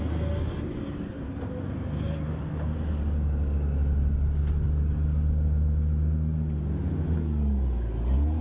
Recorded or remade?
recorded